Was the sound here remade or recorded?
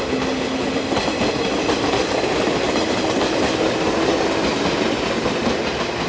recorded